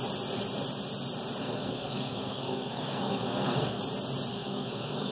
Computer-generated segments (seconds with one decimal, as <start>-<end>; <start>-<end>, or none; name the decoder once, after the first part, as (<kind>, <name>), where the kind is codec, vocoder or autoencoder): 1.4-3.8 (codec, SNAC); 4.3-5.1